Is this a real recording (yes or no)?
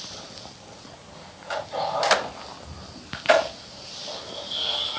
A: yes